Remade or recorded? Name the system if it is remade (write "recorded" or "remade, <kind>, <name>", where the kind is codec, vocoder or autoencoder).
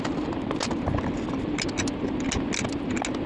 recorded